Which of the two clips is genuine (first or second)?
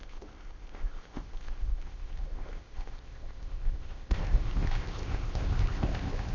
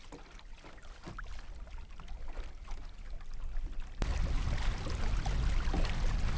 second